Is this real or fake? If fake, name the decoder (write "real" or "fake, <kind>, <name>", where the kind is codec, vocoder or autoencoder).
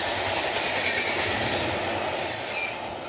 real